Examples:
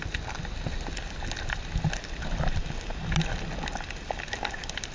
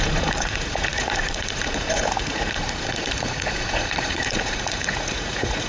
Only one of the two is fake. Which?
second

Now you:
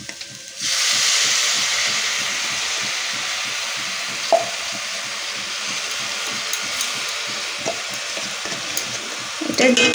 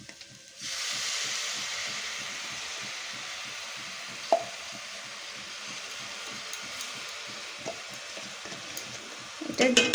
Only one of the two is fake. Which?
second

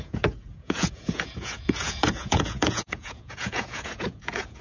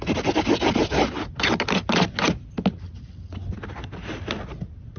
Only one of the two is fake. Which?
first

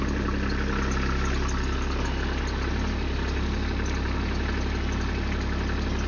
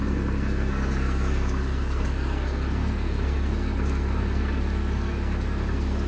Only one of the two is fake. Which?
second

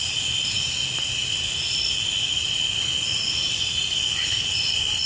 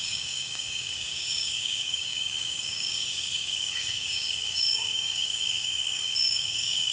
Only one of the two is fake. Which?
second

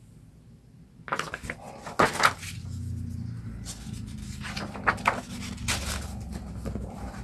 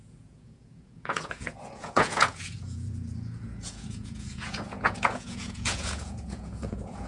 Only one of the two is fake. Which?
second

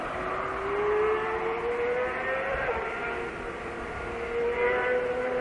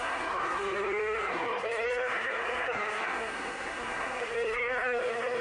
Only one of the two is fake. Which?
second